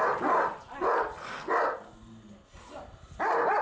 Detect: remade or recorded recorded